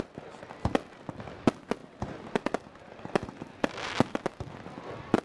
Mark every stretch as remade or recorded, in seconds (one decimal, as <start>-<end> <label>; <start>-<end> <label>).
0.0-5.2 recorded